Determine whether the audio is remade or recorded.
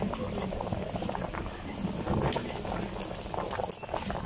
recorded